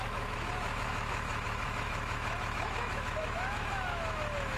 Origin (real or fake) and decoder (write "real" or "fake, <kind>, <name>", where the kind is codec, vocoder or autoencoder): fake, autoencoder, DAC-VAE